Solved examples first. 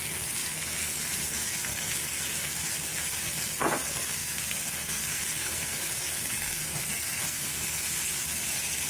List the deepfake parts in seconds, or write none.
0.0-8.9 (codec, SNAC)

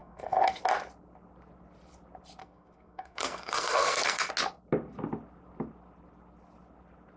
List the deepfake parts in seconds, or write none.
0.0-0.6 (codec, SNAC); 2.4-4.3

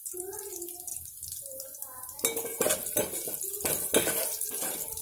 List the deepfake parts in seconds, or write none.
none

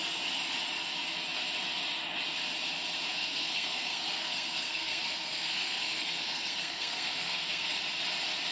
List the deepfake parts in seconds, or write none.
3.1-7.7 (codec, SNAC)

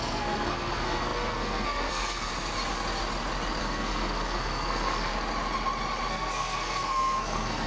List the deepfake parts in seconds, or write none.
0.0-2.3 (codec, SNAC); 3.6-5.1; 6.1-7.7

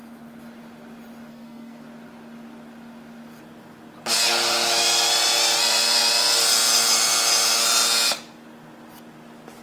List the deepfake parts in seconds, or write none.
1.3-1.8 (codec, SNAC)

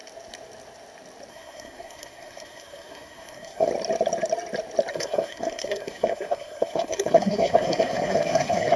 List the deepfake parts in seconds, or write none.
1.3-3.7 (codec, SNAC); 4.9-8.8

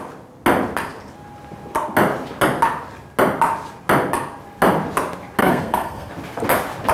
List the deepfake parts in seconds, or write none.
5.4-6.1 (codec, SNAC)